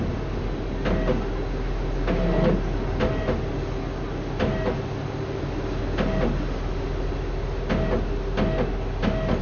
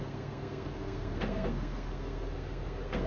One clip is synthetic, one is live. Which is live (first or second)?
first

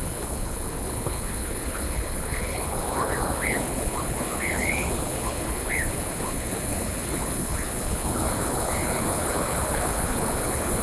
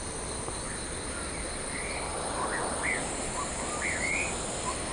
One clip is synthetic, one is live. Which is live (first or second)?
second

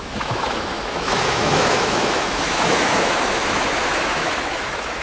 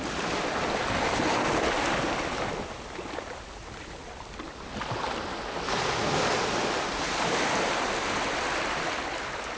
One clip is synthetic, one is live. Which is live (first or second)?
second